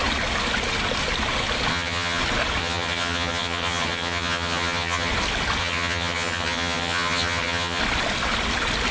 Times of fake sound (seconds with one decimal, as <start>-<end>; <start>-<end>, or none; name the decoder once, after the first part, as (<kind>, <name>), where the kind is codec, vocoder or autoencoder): 1.7-2.2 (vocoder, HiFi-GAN); 2.6-5.1; 5.6-7.8